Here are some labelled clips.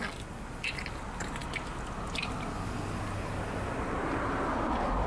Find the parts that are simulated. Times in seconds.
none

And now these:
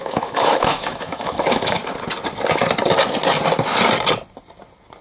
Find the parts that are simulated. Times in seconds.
0.0-1.8 (autoencoder, DAC-VAE)

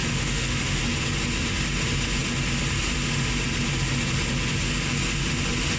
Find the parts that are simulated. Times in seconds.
0.0-0.8 (autoencoder, DAC-VAE)

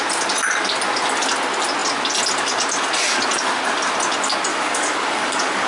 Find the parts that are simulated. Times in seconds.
4.5-5.7 (codec, DAC)

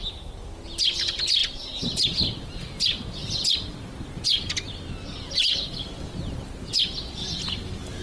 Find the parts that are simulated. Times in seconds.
none

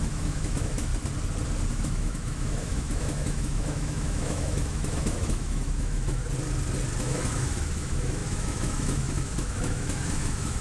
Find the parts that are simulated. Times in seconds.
0.0-0.9 (autoencoder, DAC-VAE); 1.7-6.2; 7.0-10.6

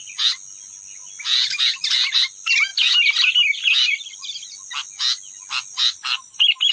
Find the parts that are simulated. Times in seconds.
none